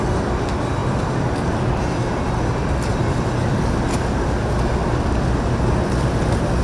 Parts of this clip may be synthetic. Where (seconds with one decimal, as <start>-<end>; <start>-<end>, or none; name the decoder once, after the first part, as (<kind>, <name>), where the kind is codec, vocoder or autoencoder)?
none